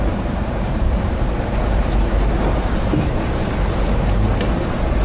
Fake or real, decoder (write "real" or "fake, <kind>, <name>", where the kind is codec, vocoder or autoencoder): fake, vocoder, BigVGAN v2